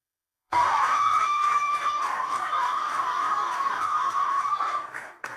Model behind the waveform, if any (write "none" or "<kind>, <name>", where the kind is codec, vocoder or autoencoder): codec, DAC